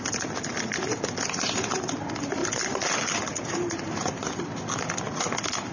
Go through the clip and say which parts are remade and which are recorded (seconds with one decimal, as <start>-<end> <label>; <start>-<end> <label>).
0.0-5.7 recorded